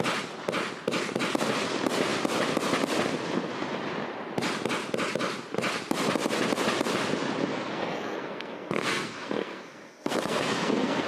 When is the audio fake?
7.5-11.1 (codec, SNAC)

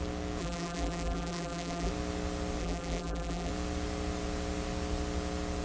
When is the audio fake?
0.4-1.9 (vocoder, BigVGAN v2); 2.6-3.5

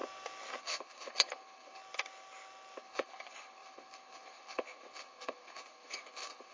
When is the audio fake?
0.6-1.8 (codec, HILCodec); 2.8-6.5

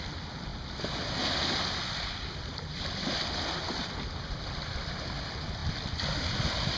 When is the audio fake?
none

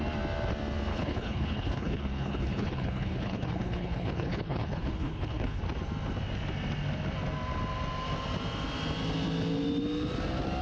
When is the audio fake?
0.9-5.6 (codec, HILCodec)